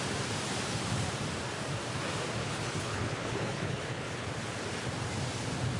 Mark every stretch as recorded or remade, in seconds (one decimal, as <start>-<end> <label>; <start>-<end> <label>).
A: 0.0-2.4 recorded; 2.4-4.3 remade; 4.3-5.8 recorded